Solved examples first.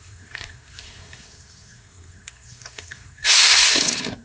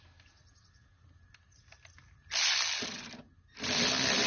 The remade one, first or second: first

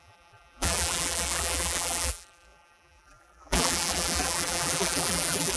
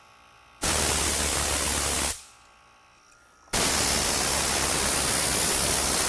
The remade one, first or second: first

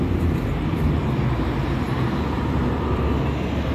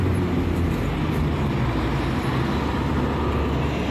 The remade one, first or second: first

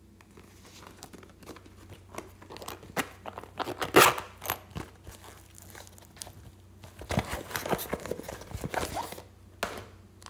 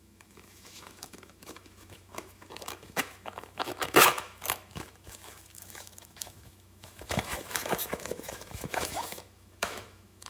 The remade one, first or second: second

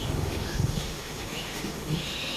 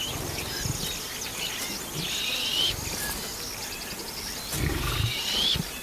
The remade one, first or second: first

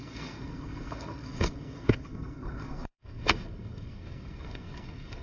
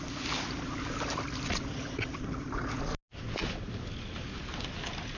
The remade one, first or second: first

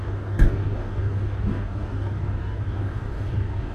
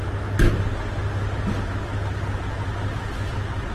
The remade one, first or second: first